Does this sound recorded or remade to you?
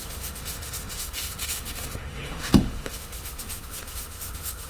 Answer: remade